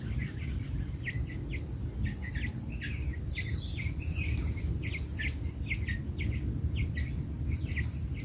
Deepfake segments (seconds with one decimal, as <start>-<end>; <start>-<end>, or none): none